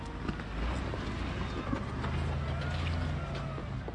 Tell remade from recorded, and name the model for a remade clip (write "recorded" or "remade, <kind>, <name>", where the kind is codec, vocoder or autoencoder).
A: recorded